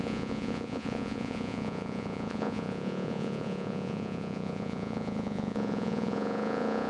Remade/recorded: remade